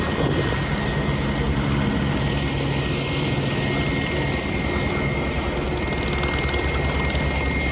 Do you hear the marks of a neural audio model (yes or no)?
no